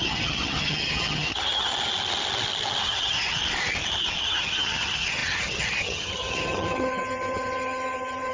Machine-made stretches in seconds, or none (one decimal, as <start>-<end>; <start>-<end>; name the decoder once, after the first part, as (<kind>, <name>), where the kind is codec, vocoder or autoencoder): 0.0-1.7 (vocoder, HiFi-GAN); 2.8-3.4; 4.2-8.3